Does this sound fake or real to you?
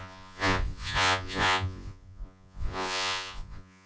fake